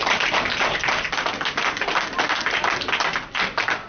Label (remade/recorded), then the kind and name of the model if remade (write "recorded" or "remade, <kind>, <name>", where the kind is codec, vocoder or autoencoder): recorded